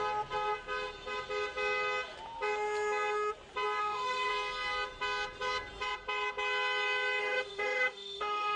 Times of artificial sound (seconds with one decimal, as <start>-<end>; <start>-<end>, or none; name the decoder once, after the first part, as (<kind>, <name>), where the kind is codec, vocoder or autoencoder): 3.8-4.3 (autoencoder, DAC-VAE); 7.2-8.6